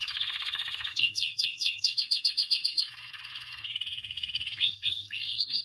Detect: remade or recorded remade